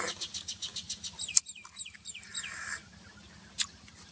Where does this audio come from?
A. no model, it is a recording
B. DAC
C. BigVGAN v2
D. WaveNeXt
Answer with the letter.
A